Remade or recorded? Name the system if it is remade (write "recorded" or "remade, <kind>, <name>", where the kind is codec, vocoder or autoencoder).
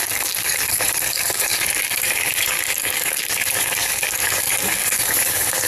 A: remade, codec, DAC